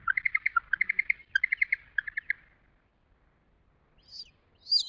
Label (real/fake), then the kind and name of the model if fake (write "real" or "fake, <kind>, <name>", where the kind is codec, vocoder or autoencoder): real